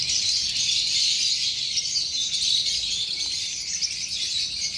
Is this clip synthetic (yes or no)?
no